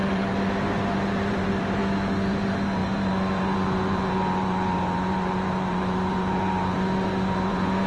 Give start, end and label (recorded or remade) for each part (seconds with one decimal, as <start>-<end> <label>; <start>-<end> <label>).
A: 0.0-1.8 remade; 1.8-2.3 recorded; 2.3-7.9 remade